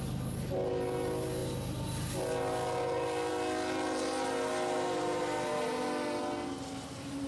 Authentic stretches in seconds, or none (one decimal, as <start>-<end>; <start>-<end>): 0.0-7.3